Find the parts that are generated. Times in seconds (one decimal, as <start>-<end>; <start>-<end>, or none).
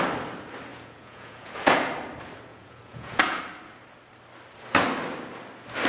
0.7-1.9; 2.5-3.4